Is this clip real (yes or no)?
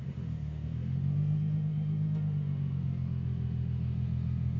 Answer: no